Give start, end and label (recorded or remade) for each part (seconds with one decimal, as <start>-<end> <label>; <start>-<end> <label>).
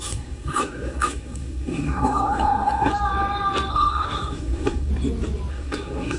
0.0-2.9 remade; 2.9-3.7 recorded; 3.7-4.9 remade; 4.9-5.5 recorded; 5.5-6.2 remade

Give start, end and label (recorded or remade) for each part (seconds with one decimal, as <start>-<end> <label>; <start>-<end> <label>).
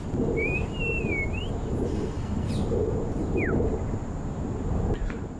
0.0-1.9 recorded; 1.9-2.5 remade; 2.5-5.4 recorded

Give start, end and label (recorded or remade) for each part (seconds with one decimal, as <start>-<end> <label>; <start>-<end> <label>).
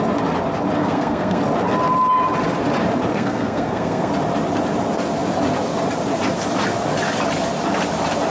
0.0-0.8 recorded; 0.8-1.4 remade; 1.4-3.1 recorded; 3.1-4.1 remade; 4.1-8.3 recorded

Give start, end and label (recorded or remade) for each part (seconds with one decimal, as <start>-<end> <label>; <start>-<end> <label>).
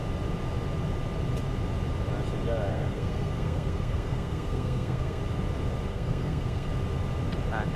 0.0-2.7 recorded; 2.7-5.2 remade; 5.2-5.9 recorded; 5.9-6.7 remade; 6.7-7.8 recorded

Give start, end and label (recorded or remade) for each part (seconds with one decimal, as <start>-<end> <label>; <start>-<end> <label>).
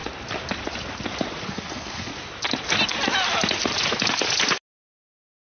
0.0-1.5 recorded; 1.5-2.1 remade; 2.1-5.6 recorded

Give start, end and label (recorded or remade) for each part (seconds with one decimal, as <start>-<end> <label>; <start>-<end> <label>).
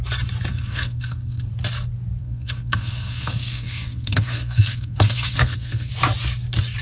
0.0-0.5 recorded; 0.5-1.5 remade; 1.5-2.2 recorded; 2.2-5.9 remade; 5.9-6.8 recorded